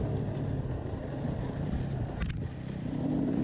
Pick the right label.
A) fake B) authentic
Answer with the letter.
B